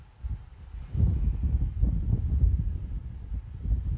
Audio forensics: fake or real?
real